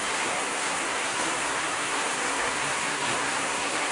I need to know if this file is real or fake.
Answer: fake